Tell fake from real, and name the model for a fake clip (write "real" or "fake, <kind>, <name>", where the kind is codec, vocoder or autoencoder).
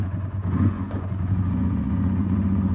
fake, vocoder, Vocos